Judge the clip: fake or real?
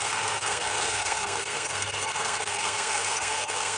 fake